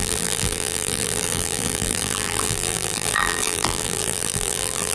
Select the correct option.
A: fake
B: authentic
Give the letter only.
A